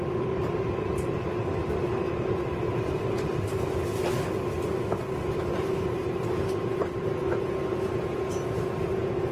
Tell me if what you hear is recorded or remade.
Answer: recorded